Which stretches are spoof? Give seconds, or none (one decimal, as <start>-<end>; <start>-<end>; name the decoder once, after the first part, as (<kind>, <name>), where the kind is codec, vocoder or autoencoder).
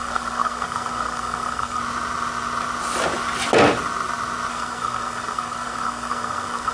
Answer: 0.0-1.8 (codec, SNAC); 4.5-6.7